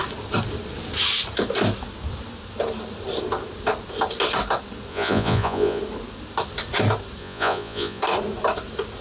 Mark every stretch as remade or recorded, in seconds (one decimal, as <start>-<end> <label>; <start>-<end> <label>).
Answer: 0.0-4.9 recorded; 4.9-5.8 remade; 5.8-7.2 recorded; 7.2-8.0 remade; 8.0-9.0 recorded